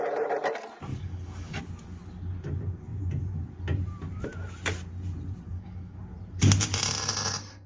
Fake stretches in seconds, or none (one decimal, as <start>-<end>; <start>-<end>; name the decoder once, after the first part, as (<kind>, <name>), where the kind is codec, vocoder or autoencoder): 0.9-1.6 (codec, DAC); 5.5-6.0